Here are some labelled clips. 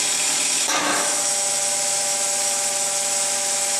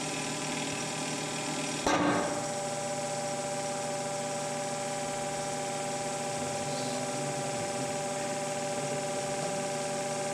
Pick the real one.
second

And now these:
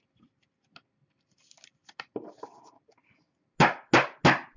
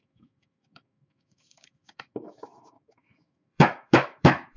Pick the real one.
first